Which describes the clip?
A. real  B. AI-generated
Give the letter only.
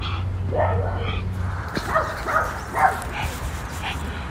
A